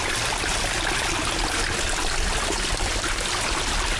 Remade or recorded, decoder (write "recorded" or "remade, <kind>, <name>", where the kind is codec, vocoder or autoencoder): recorded